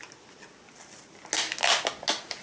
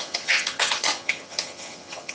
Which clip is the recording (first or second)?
first